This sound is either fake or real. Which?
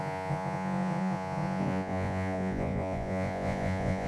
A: fake